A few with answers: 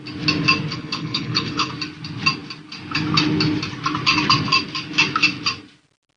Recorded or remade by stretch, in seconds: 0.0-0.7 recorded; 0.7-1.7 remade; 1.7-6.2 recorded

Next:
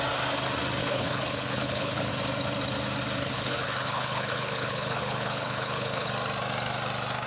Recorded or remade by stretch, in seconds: 0.0-0.8 recorded; 0.8-2.1 remade; 2.1-3.2 recorded; 3.2-6.1 remade; 6.1-7.3 recorded

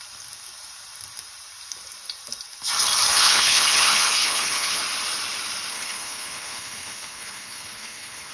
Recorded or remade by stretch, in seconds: 0.0-3.1 recorded; 3.1-4.8 remade; 4.8-5.7 recorded; 5.7-8.3 remade

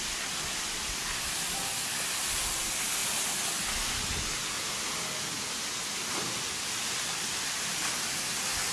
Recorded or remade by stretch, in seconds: 0.0-8.7 recorded

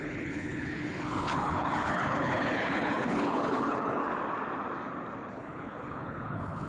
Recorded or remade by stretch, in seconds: 0.0-4.0 remade; 4.0-5.3 recorded; 5.3-6.7 remade

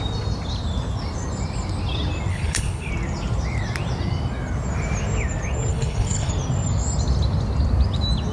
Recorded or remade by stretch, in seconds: 0.0-2.3 recorded; 2.3-2.9 remade; 2.9-5.7 recorded; 5.7-6.3 remade; 6.3-8.3 recorded

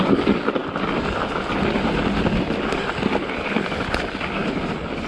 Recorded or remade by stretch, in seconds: 0.0-5.1 recorded

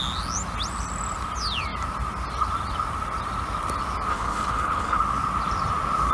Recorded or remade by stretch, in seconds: 0.0-4.1 recorded; 4.1-5.0 remade; 5.0-6.1 recorded